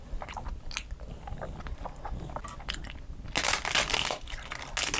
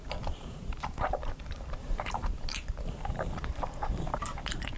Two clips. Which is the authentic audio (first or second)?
first